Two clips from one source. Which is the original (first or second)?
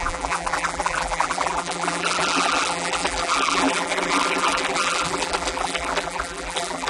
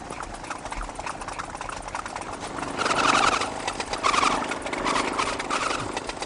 second